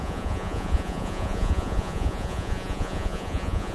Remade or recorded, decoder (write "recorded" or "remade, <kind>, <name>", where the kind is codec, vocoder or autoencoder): remade, vocoder, Vocos